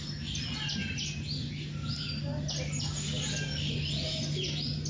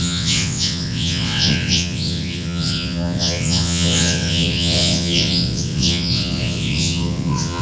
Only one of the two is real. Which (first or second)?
first